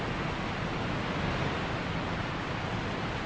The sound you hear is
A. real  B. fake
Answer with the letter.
A